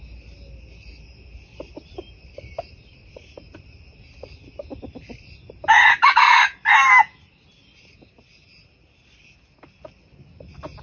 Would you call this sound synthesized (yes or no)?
no